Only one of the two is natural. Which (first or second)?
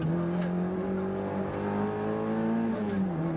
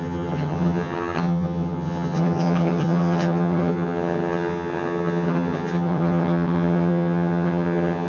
first